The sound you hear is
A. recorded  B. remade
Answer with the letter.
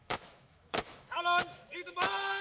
B